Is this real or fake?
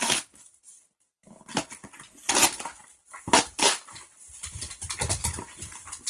real